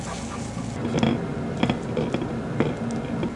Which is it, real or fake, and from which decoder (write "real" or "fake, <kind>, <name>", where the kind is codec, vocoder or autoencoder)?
real